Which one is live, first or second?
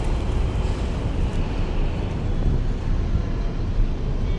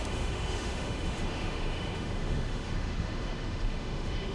first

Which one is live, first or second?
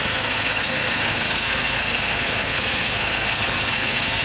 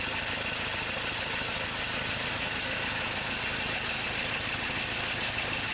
second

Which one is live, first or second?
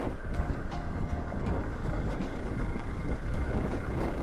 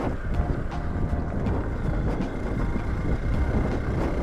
second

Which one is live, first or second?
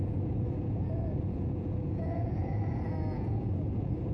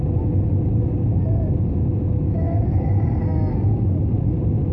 second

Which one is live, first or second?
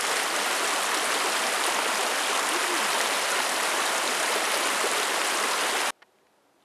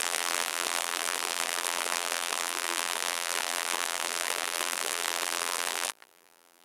first